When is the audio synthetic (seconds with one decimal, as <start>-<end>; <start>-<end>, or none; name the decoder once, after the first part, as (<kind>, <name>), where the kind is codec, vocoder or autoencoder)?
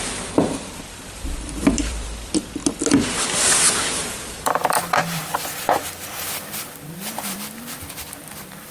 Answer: 0.0-2.6 (vocoder, BigVGAN v2); 3.9-8.7